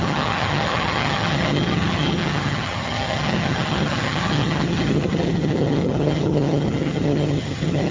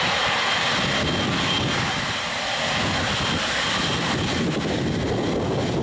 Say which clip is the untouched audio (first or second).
second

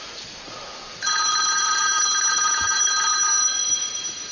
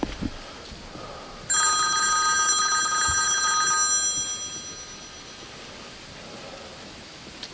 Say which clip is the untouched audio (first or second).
second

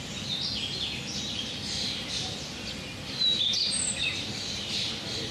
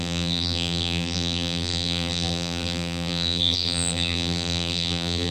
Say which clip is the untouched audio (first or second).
first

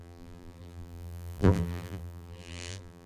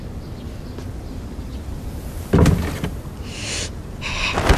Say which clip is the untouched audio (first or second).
second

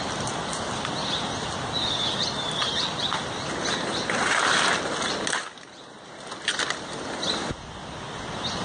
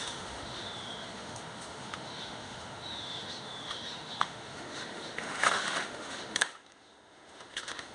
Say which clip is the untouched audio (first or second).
first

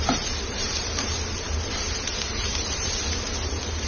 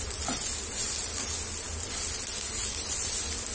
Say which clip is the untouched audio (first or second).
second